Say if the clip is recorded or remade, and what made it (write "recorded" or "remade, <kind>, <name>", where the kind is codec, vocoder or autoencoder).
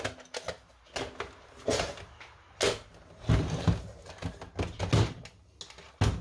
recorded